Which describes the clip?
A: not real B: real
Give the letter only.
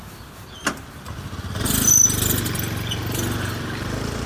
B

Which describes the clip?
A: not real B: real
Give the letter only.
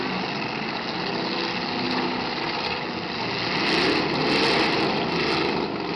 B